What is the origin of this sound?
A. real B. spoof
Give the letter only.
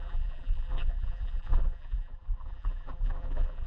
B